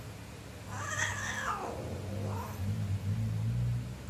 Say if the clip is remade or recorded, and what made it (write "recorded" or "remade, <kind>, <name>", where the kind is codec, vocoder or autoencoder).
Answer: recorded